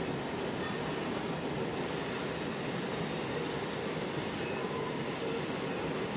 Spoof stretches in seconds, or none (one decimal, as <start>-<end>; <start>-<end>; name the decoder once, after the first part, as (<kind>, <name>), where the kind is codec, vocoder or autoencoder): 4.6-5.2 (vocoder, BigVGAN v2)